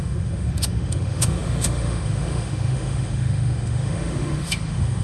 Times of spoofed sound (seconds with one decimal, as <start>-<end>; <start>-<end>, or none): 0.0-5.0